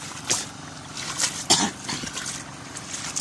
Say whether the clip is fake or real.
real